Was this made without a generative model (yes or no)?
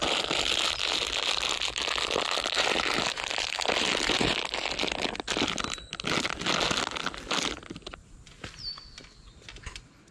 yes